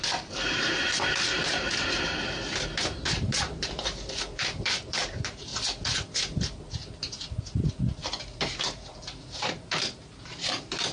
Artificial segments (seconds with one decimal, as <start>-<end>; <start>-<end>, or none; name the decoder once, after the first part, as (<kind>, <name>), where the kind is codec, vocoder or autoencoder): 0.0-5.5 (vocoder, BigVGAN v2); 8.2-10.9